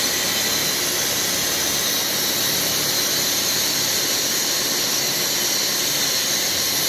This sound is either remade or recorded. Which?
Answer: recorded